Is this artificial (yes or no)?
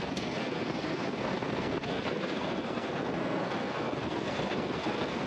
yes